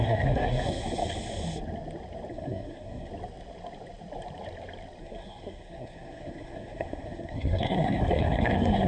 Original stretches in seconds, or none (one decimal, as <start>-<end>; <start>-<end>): 1.0-2.3; 3.1-5.0